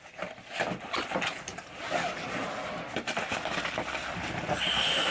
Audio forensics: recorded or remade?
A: recorded